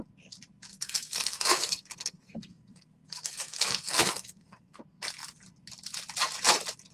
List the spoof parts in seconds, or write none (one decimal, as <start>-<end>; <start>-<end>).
0.7-4.8